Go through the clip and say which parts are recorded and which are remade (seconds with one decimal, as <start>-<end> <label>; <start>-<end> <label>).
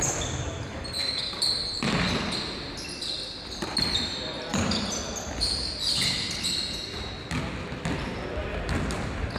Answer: 0.0-0.7 recorded; 0.7-1.2 remade; 1.2-9.4 recorded